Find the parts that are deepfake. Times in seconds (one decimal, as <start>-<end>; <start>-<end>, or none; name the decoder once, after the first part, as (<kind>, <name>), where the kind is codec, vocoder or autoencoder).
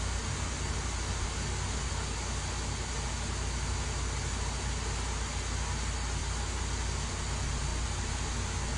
none